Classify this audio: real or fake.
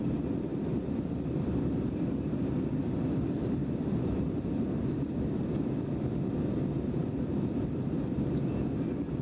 fake